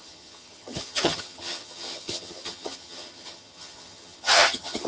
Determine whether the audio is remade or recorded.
remade